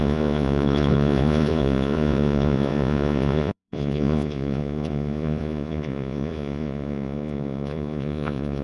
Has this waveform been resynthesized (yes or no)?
yes